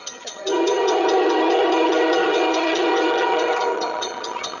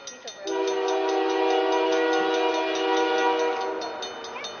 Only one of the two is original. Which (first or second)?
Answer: second